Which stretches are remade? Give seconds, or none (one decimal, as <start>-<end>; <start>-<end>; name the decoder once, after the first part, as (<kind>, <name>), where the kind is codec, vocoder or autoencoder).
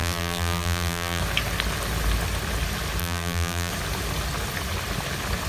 0.0-1.2 (vocoder, BigVGAN v2); 3.0-3.7